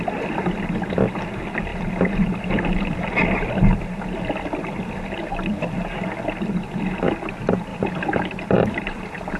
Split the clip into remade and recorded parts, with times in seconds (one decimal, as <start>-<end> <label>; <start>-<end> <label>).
0.0-7.7 recorded; 7.7-9.4 remade